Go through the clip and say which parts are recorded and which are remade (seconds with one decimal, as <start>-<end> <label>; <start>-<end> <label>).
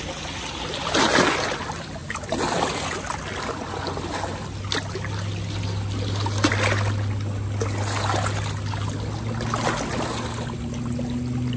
0.0-11.6 recorded